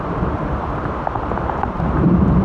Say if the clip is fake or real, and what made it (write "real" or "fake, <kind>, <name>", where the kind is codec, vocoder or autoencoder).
fake, vocoder, BigVGAN v2